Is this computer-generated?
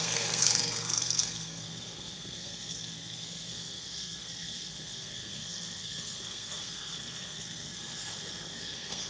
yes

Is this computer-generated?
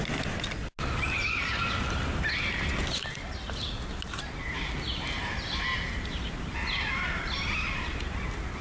no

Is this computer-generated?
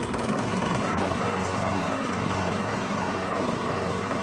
yes